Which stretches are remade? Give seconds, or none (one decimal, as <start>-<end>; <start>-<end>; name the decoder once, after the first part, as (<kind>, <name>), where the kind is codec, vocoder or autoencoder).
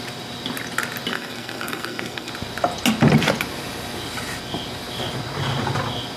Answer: 1.1-2.3 (codec, SNAC)